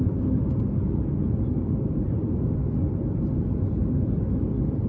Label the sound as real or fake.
fake